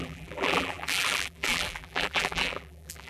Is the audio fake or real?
fake